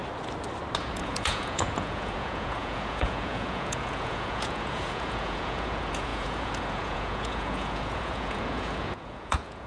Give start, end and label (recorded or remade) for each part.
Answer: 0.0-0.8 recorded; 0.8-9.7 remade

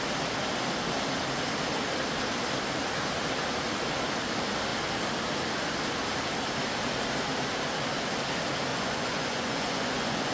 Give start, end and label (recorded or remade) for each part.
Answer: 0.0-8.7 recorded; 8.7-10.3 remade

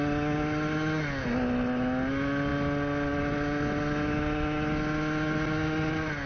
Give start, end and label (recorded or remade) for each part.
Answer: 0.0-6.3 recorded

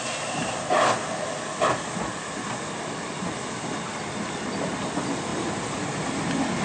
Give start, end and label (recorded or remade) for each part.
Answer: 0.0-6.6 recorded

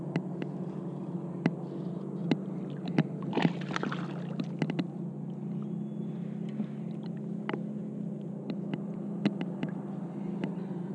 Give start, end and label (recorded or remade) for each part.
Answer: 0.0-10.9 recorded

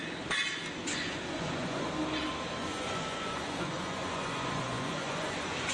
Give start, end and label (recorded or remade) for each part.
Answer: 0.0-0.8 recorded; 0.8-1.9 remade; 1.9-2.6 recorded; 2.6-5.7 remade